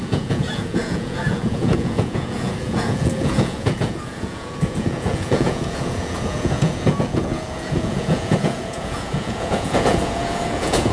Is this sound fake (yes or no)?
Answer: yes